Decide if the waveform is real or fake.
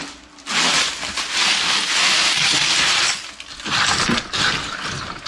real